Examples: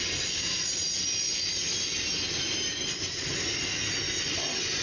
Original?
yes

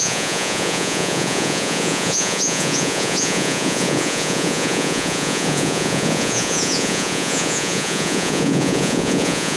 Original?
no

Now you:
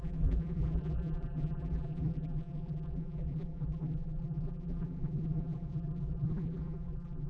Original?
no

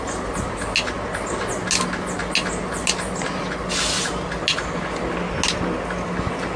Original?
yes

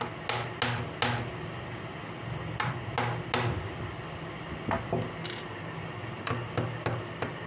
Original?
yes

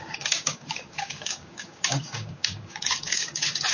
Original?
no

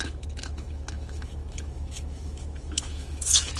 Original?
no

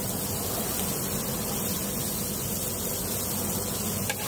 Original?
yes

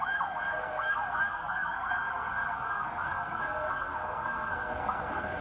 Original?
no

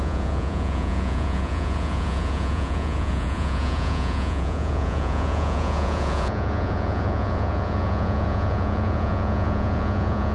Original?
no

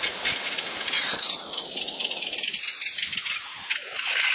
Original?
yes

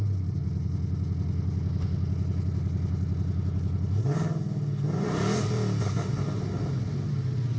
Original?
yes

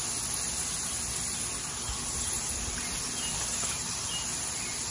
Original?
yes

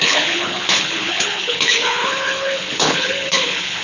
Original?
no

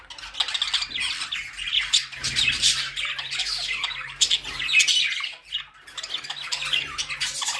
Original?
yes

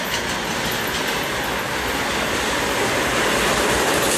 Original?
yes